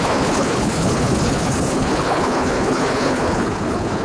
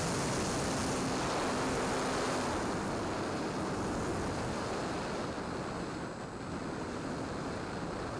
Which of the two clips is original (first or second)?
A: second